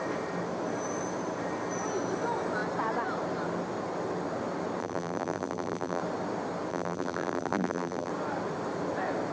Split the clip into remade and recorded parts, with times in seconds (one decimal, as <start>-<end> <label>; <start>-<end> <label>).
0.0-4.8 recorded; 4.8-6.0 remade; 6.0-6.7 recorded; 6.7-8.1 remade; 8.1-9.3 recorded

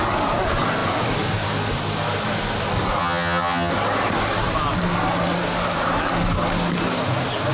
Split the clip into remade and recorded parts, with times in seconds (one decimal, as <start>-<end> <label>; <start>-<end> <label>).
0.0-3.0 recorded; 3.0-3.7 remade; 3.7-7.5 recorded

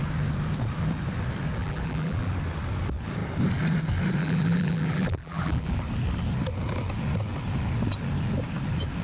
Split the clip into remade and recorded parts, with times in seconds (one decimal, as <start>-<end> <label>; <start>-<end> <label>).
0.0-1.6 recorded; 1.6-2.3 remade; 2.3-4.2 recorded; 4.2-5.8 remade; 5.8-9.0 recorded

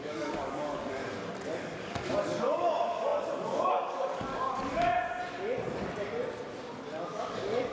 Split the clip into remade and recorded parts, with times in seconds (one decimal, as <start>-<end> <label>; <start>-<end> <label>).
0.0-1.0 remade; 1.0-1.6 recorded; 1.6-4.9 remade; 4.9-7.3 recorded; 7.3-7.7 remade